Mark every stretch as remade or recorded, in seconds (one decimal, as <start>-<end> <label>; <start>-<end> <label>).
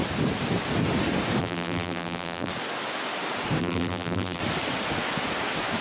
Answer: 0.0-1.4 recorded; 1.4-2.5 remade; 2.5-3.6 recorded; 3.6-4.4 remade; 4.4-5.8 recorded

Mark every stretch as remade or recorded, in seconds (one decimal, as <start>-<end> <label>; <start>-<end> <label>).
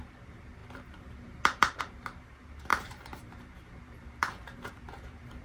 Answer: 0.0-5.4 remade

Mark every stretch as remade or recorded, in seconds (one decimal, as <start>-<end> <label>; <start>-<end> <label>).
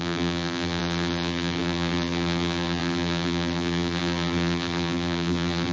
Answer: 0.0-5.7 remade